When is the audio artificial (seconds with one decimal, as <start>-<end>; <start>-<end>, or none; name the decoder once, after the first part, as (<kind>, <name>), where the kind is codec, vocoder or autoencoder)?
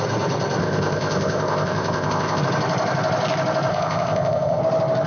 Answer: 0.6-2.4 (codec, ZipCodec); 3.7-4.6